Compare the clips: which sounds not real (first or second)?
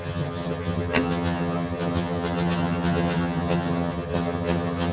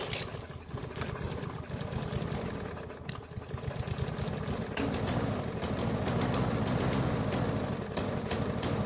first